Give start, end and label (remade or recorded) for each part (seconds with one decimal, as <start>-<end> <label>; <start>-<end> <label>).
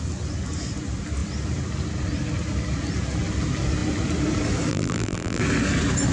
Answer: 0.0-4.7 recorded; 4.7-5.4 remade; 5.4-6.1 recorded